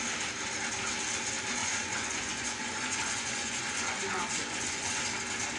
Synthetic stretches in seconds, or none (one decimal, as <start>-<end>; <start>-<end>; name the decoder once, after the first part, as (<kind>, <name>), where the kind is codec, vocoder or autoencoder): 1.6-5.0 (vocoder, Vocos)